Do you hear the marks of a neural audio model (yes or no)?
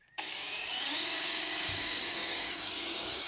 yes